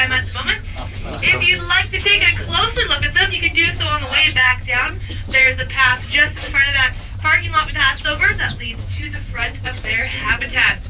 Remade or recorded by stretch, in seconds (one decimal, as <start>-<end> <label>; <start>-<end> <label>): 0.0-1.1 remade; 1.1-1.8 recorded; 1.8-4.5 remade; 4.5-5.0 recorded; 5.0-5.9 remade; 5.9-7.7 recorded; 7.7-10.9 remade